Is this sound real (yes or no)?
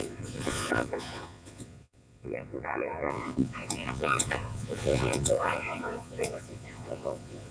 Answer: no